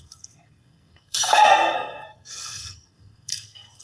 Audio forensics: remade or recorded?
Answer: remade